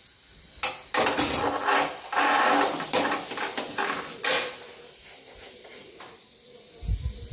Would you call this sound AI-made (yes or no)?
no